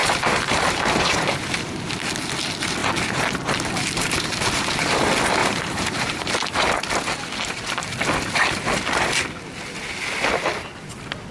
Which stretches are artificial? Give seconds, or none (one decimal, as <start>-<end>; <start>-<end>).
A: 0.0-1.9; 5.4-6.3